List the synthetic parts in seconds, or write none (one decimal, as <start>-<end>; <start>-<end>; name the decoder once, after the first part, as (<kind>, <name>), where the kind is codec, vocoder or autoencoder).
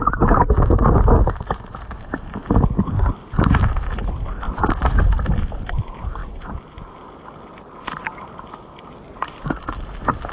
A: none